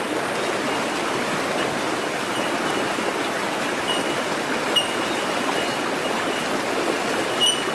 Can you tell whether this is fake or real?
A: real